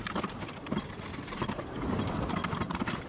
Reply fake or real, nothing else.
real